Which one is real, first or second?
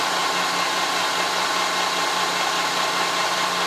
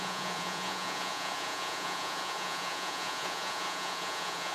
first